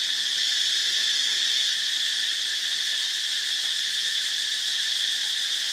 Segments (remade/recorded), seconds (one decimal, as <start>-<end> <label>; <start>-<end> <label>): 0.0-5.7 recorded